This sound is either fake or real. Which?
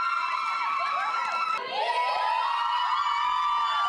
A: real